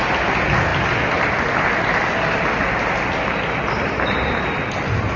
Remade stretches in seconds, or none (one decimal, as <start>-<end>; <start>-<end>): none